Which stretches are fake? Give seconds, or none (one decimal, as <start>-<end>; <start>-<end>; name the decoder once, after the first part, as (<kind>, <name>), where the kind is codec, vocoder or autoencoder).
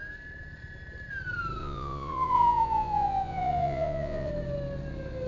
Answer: 1.6-4.3 (vocoder, Vocos)